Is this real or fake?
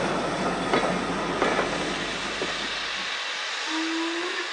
real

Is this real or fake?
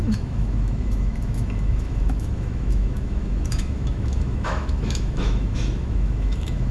fake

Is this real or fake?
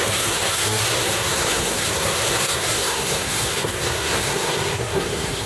fake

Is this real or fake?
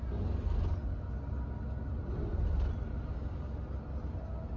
real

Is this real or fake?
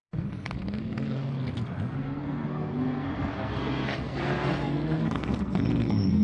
fake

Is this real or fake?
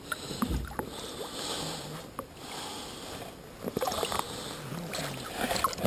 real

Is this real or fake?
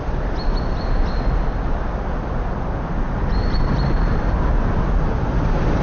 real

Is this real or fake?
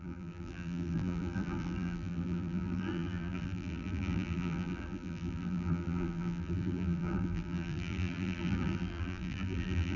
fake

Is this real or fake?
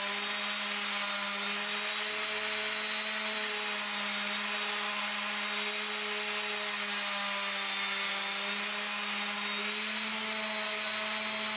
real